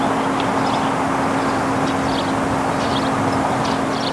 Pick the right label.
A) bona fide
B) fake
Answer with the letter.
A